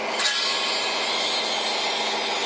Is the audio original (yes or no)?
yes